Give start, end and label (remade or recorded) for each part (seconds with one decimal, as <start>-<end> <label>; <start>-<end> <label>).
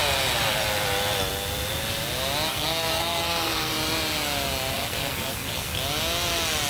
0.0-2.5 recorded; 2.5-3.7 remade; 3.7-4.7 recorded; 4.7-5.7 remade; 5.7-6.7 recorded